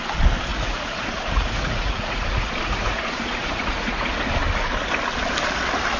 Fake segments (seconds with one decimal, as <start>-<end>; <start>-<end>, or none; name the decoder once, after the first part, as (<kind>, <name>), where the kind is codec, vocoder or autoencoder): 0.5-4.1 (vocoder, Vocos)